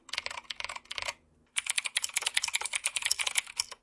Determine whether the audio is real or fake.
real